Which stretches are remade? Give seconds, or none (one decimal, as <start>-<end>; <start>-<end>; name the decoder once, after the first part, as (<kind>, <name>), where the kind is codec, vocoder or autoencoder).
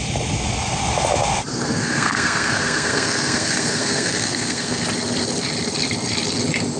1.5-4.8 (codec, SNAC)